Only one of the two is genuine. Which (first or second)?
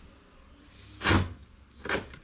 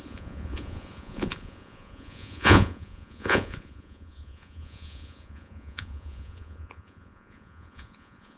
first